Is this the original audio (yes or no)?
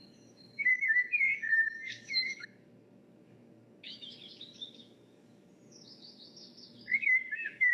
no